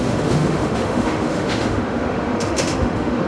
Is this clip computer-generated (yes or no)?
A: yes